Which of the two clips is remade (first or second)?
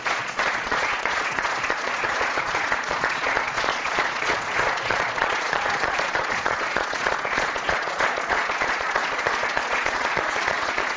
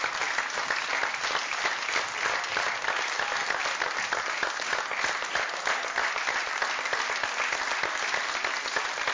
first